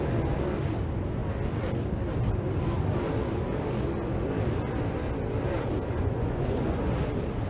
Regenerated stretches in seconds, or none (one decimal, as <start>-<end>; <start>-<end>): 5.9-6.8